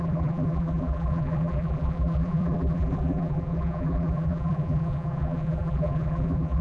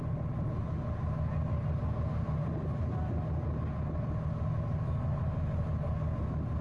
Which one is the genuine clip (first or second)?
second